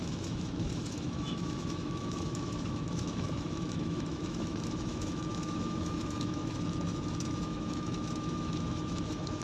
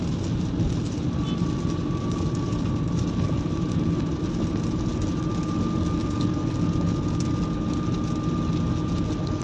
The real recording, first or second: second